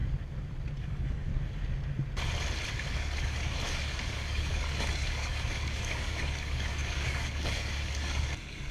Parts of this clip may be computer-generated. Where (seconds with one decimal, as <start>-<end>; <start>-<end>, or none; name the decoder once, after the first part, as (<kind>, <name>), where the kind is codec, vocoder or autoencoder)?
0.8-1.3 (codec, DAC); 2.7-8.7